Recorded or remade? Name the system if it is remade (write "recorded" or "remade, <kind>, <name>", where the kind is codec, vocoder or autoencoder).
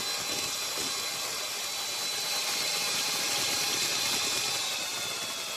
recorded